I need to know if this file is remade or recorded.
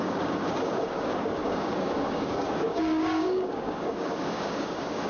remade